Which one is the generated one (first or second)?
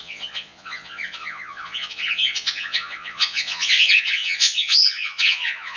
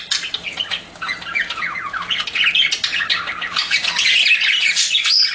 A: first